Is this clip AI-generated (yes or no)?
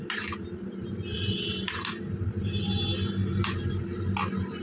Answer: no